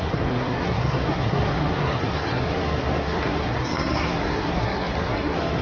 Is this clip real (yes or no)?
no